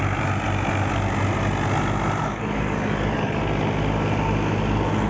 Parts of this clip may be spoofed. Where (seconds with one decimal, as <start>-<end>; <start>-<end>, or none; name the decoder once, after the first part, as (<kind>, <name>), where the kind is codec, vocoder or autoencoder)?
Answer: 2.2-3.4 (codec, DAC)